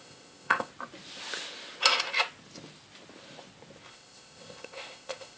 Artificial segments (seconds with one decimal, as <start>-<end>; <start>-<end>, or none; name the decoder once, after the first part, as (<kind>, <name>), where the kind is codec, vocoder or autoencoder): 0.0-0.7 (codec, ZipCodec); 3.9-5.4